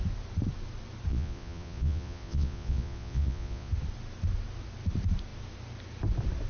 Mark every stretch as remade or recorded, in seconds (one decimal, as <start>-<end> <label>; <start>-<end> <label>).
0.0-1.1 recorded; 1.1-3.7 remade; 3.7-6.5 recorded